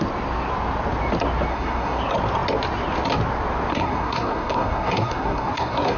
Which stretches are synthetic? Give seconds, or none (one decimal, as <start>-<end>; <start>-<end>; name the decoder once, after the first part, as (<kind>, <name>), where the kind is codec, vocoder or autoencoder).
1.5-2.0 (codec, SNAC); 3.7-6.0